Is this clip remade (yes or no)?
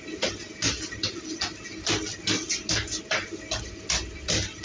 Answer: no